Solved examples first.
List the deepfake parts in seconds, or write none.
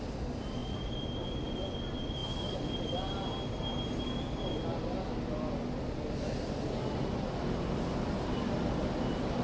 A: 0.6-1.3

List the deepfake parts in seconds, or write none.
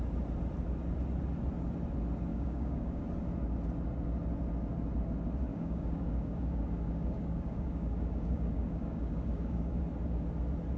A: 2.3-3.0; 5.5-9.8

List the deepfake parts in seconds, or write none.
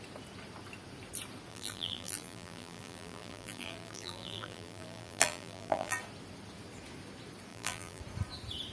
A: 1.5-6.0; 7.5-8.0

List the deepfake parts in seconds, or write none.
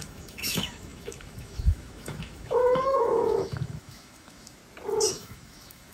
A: 0.0-4.6; 5.1-5.9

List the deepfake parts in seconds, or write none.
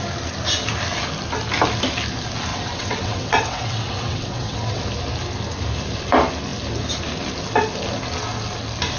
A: 2.5-4.8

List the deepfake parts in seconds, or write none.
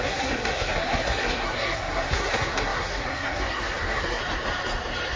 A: 0.0-4.2